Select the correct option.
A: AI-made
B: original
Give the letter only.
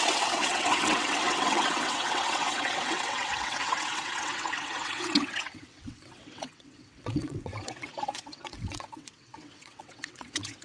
A